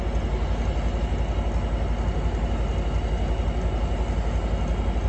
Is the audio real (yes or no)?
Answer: yes